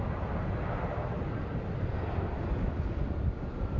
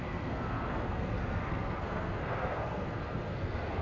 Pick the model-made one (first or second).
second